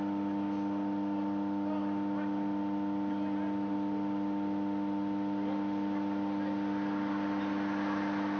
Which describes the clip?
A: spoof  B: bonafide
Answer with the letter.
B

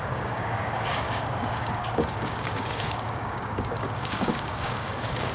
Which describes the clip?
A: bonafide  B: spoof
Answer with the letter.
B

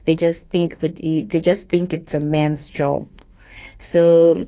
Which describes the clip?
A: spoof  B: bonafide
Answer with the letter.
A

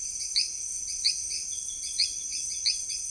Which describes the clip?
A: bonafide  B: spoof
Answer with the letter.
B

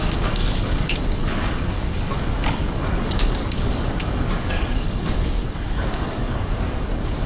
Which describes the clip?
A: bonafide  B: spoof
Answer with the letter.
B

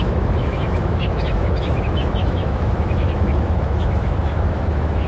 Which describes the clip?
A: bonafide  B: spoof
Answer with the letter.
B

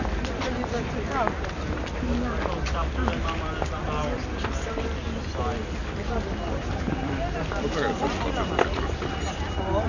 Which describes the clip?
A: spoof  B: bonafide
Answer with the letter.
B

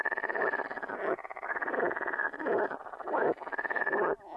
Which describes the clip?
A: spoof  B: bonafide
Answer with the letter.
B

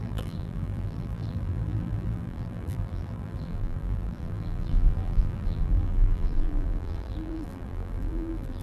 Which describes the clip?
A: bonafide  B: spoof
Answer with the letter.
B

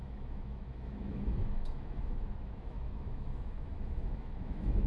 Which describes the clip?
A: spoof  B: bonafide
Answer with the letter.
A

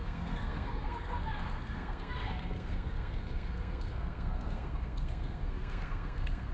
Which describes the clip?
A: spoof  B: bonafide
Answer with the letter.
A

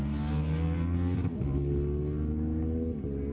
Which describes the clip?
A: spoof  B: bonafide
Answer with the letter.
B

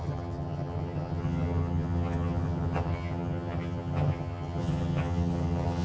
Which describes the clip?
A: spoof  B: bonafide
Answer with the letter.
A